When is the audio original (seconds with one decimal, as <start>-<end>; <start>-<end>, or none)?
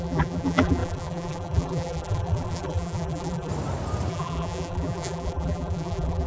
3.5-4.1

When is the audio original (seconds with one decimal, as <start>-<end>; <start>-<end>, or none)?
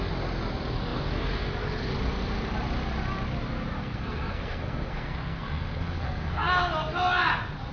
0.0-3.8; 6.6-7.7